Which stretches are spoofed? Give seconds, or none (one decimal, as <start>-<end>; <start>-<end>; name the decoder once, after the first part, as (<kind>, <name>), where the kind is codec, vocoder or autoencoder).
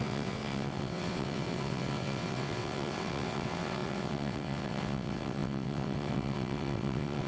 0.0-7.3 (vocoder, WaveNeXt)